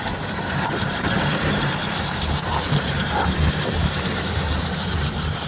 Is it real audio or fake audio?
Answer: fake